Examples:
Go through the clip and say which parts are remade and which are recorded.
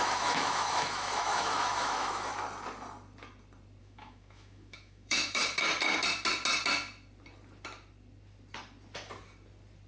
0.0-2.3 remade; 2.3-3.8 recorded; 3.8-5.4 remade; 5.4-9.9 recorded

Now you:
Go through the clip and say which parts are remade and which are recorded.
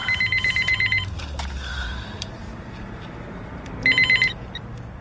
0.0-1.2 remade; 1.2-1.7 recorded; 1.7-3.8 remade; 3.8-5.0 recorded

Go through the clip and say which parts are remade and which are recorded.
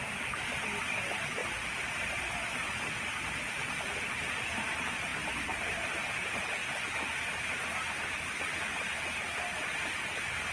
0.0-10.5 recorded